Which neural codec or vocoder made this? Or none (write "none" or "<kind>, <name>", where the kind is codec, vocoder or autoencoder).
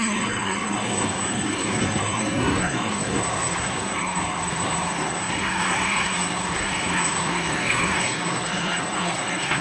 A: codec, SNAC